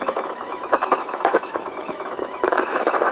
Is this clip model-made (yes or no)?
yes